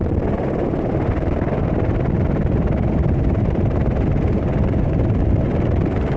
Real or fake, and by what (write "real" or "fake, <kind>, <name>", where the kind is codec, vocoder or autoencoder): real